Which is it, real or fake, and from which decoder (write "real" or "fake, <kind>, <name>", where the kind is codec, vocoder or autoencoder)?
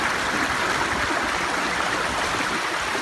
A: real